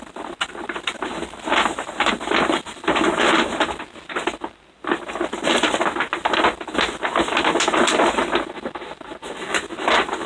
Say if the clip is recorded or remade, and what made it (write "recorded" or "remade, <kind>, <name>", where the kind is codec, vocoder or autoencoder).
recorded